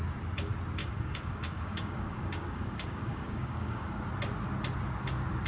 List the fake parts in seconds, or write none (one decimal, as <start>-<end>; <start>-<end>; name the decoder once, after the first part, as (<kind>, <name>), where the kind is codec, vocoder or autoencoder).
0.8-4.0 (codec, DAC)